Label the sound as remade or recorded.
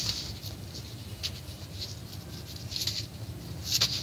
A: recorded